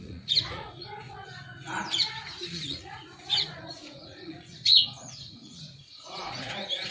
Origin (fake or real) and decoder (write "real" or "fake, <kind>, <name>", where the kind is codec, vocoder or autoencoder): fake, vocoder, Vocos